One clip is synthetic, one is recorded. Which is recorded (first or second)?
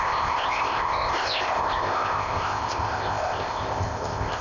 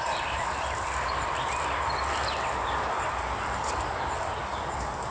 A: second